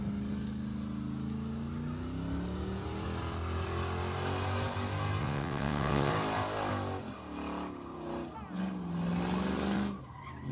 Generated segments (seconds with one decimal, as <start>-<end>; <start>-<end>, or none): 5.2-6.1